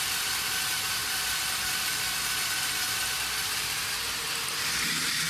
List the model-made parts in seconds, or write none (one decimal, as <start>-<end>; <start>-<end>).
1.0-4.2